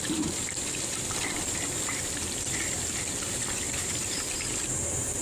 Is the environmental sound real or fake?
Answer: real